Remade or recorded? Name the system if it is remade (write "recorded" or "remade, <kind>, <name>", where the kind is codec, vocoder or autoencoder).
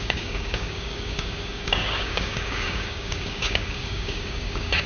remade, codec, DAC